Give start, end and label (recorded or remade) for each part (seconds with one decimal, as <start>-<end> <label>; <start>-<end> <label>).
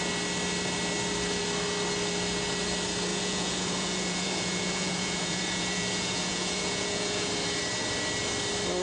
0.0-3.1 recorded; 3.1-7.3 remade; 7.3-8.8 recorded